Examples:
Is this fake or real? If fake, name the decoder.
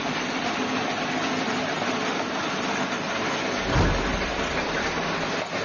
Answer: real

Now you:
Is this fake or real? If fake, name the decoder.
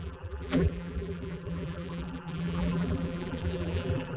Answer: fake, vocoder, BigVGAN v2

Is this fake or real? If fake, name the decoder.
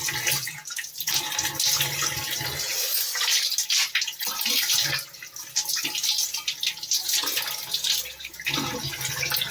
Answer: real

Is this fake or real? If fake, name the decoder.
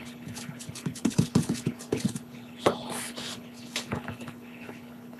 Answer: fake, codec, HILCodec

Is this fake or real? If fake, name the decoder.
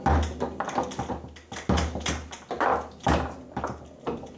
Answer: real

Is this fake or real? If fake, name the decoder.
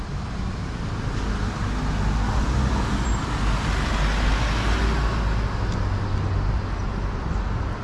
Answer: real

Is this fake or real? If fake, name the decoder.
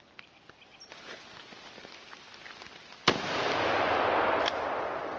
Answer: real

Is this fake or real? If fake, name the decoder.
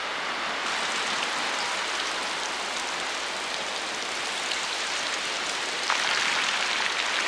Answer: real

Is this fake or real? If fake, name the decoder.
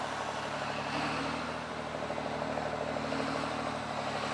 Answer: real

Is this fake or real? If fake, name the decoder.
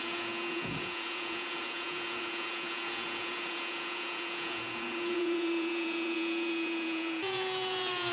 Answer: fake, vocoder, Vocos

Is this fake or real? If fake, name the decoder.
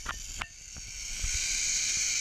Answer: real